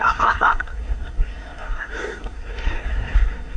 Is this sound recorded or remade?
remade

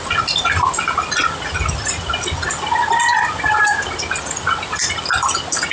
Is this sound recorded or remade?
recorded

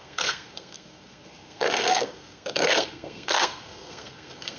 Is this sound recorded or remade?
remade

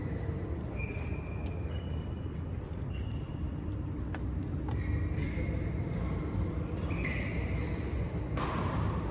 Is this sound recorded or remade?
recorded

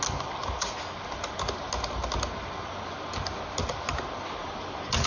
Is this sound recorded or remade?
recorded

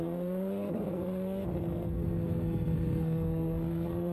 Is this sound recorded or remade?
remade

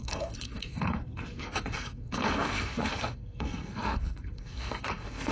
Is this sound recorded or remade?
remade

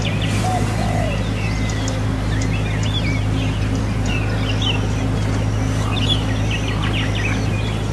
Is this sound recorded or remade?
recorded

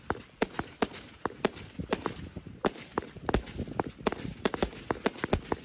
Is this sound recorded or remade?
recorded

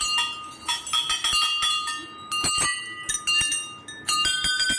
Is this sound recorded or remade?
recorded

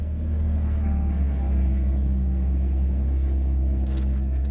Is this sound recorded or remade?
remade